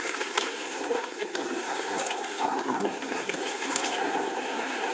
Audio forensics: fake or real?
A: fake